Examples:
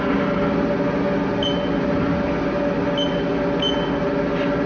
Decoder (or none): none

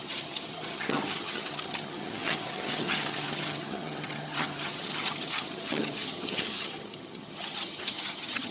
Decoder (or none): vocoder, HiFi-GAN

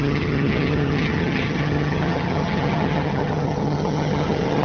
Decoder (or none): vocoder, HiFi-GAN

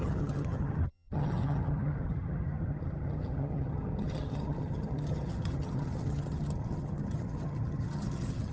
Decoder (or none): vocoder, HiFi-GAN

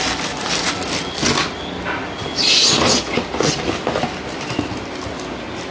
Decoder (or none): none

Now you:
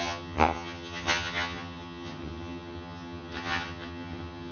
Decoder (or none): vocoder, HiFi-GAN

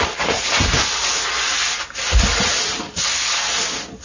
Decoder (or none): none